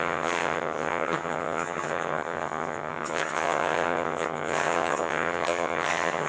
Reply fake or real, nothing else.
fake